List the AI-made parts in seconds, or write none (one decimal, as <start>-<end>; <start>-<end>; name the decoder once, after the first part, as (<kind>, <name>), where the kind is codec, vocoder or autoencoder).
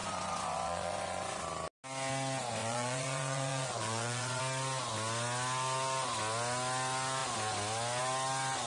0.0-1.4 (vocoder, Vocos); 2.6-4.4